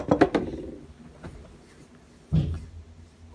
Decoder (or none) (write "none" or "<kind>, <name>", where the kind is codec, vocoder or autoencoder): none